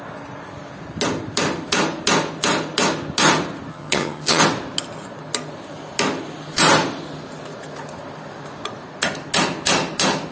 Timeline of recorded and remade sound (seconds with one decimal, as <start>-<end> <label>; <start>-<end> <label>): 0.0-3.7 recorded; 3.7-4.4 remade; 4.4-10.3 recorded